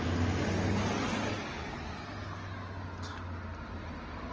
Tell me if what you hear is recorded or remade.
recorded